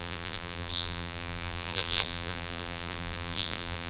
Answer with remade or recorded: remade